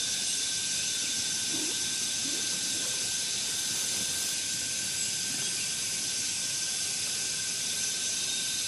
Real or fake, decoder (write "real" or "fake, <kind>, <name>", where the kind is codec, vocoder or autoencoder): real